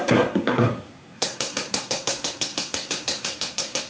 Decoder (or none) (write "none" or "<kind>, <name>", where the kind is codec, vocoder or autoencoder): codec, SNAC